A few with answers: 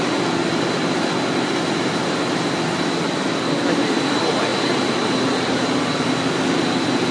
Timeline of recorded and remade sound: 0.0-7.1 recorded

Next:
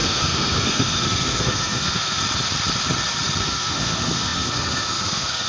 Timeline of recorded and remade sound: 0.0-2.2 remade; 2.2-3.4 recorded; 3.4-5.5 remade

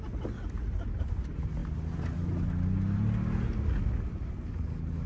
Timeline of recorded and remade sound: 0.0-5.1 recorded

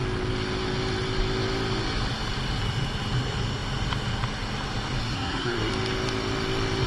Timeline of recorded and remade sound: 0.0-5.0 recorded; 5.0-5.7 remade; 5.7-6.9 recorded

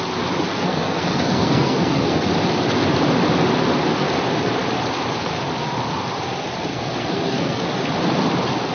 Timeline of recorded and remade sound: 0.0-0.5 recorded; 0.5-2.3 remade; 2.3-6.7 recorded; 6.7-7.6 remade; 7.6-8.7 recorded

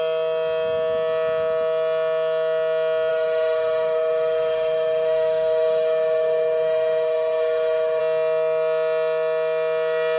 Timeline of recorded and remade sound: 0.0-3.1 recorded; 3.1-8.0 remade; 8.0-10.2 recorded

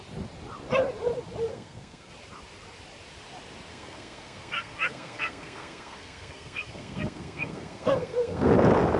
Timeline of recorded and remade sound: 0.0-1.5 recorded; 1.5-2.1 remade; 2.1-3.7 recorded; 3.7-8.5 remade; 8.5-9.0 recorded

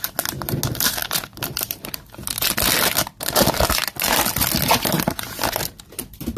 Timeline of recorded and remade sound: 0.0-6.4 recorded